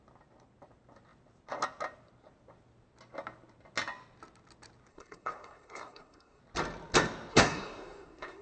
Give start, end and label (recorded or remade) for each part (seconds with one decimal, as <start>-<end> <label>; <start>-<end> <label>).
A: 0.0-4.9 recorded; 4.9-6.4 remade; 6.4-7.3 recorded; 7.3-8.4 remade

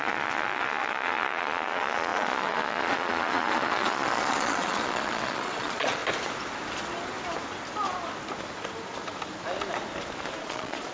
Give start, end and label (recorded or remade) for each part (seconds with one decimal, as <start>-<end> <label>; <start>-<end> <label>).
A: 0.0-6.0 remade; 6.0-10.4 recorded; 10.4-10.9 remade

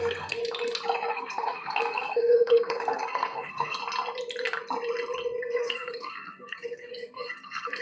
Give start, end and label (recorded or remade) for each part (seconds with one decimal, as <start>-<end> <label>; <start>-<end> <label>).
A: 0.0-0.4 remade; 0.4-1.1 recorded; 1.1-3.8 remade; 3.8-5.4 recorded; 5.4-7.8 remade

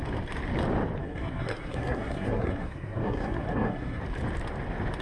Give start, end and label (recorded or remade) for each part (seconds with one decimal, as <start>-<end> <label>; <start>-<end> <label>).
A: 0.0-1.0 recorded; 1.0-4.0 remade; 4.0-5.0 recorded

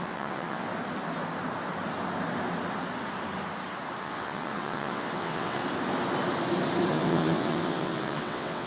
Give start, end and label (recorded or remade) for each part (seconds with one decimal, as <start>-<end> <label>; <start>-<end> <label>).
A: 0.0-0.7 remade; 0.7-4.0 recorded; 4.0-5.6 remade; 5.6-6.9 recorded; 6.9-8.7 remade

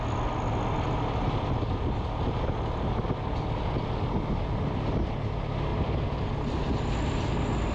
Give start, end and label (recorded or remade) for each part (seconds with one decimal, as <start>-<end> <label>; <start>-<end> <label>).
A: 0.0-7.7 recorded

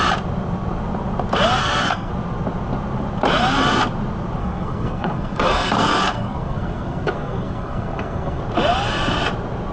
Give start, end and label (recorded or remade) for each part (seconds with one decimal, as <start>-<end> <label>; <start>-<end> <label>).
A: 0.0-1.6 recorded; 1.6-2.1 remade; 2.1-4.4 recorded; 4.4-8.4 remade; 8.4-9.7 recorded

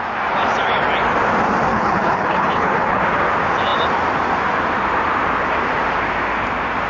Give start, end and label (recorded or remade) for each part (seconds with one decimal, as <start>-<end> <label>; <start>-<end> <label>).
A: 0.0-1.7 recorded; 1.7-3.0 remade; 3.0-6.9 recorded